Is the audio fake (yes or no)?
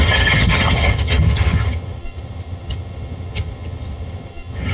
yes